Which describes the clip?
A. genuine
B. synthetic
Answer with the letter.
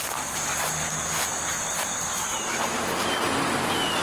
A